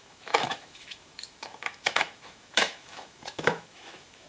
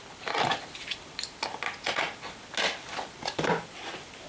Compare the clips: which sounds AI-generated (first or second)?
first